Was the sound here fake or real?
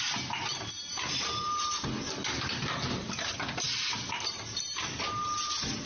real